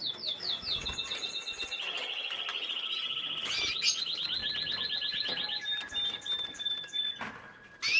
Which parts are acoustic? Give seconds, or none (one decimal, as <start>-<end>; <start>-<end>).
0.7-8.0